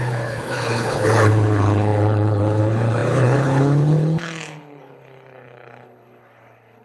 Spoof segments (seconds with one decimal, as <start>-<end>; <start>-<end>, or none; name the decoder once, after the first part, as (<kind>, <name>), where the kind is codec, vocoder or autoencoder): 0.0-6.8 (codec, HILCodec)